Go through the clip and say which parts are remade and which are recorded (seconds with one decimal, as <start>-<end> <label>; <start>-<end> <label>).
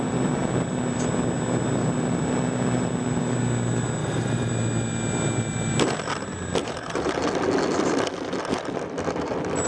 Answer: 0.0-4.0 recorded; 4.0-4.5 remade; 4.5-6.6 recorded; 6.6-7.1 remade; 7.1-9.7 recorded